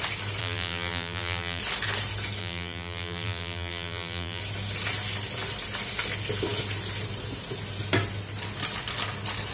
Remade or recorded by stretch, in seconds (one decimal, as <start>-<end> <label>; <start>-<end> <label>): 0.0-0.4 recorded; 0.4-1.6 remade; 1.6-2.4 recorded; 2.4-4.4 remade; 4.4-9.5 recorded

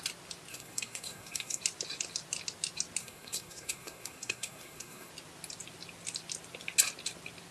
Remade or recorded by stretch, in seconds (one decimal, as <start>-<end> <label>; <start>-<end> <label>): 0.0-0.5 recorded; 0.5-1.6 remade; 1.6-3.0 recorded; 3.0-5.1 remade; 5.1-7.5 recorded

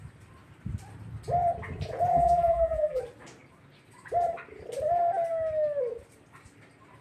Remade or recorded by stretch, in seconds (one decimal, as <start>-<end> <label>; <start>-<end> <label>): 0.0-2.1 recorded; 2.1-3.0 remade; 3.0-7.0 recorded

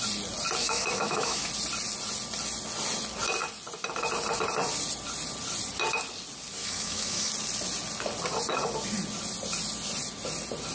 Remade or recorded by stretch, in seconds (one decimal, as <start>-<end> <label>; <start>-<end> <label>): 0.0-0.6 recorded; 0.6-1.5 remade; 1.5-6.6 recorded; 6.6-7.3 remade; 7.3-10.7 recorded

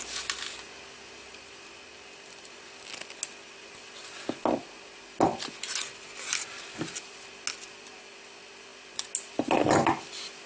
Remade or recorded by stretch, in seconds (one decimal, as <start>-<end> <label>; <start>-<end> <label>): 0.0-10.5 recorded